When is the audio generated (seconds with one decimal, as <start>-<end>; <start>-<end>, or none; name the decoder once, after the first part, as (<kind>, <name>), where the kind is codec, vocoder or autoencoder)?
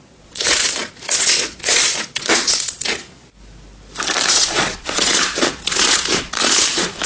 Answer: 0.0-3.0 (vocoder, Vocos); 4.3-7.1